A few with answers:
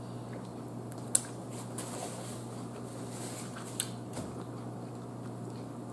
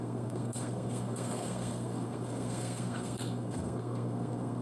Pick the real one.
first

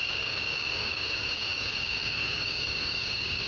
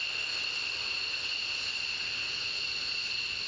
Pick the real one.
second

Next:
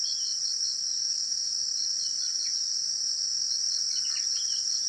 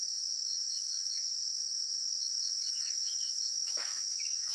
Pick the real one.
first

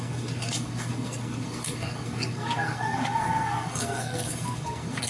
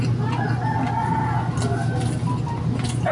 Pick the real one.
second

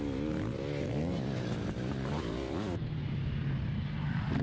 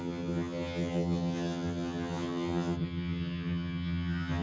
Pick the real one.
first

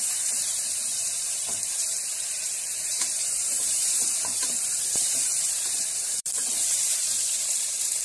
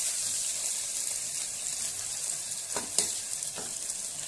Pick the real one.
second